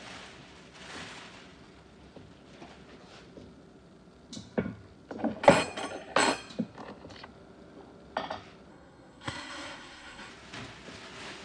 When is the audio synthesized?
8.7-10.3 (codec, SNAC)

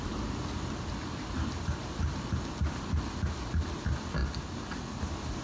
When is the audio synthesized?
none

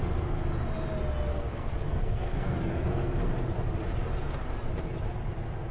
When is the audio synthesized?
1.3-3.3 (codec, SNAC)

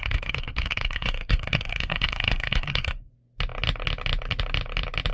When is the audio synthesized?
0.0-3.1 (codec, SNAC)

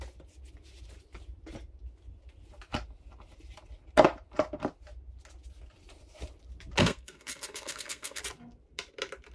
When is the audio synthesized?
6.8-8.2 (codec, SNAC)

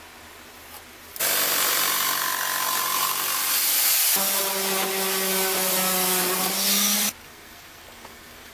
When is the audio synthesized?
7.2-8.5 (codec, SNAC)